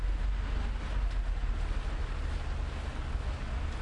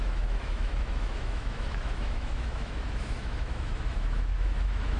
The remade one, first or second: second